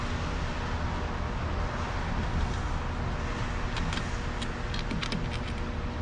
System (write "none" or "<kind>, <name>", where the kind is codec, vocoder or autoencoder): none